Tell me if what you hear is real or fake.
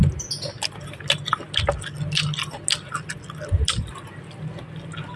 real